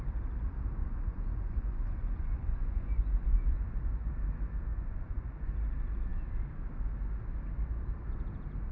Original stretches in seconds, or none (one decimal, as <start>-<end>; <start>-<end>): 0.0-0.8; 4.1-4.7; 5.5-8.7